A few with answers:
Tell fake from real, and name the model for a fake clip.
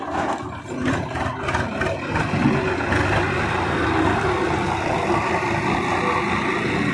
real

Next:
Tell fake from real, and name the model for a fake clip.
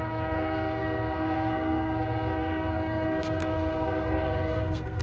fake, codec, SNAC